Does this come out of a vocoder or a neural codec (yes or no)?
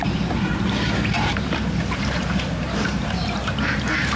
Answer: yes